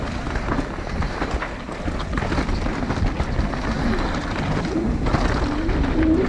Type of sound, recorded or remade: recorded